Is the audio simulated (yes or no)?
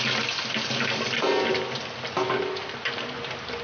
no